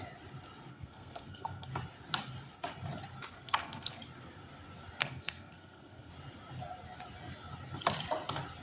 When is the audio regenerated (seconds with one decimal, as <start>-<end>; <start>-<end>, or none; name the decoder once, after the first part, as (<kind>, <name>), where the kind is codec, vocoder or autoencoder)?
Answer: 0.7-1.7 (codec, SNAC); 3.3-4.0; 5.0-6.1